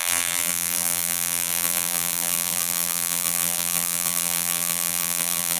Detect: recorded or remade remade